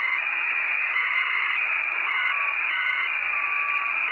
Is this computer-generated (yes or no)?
no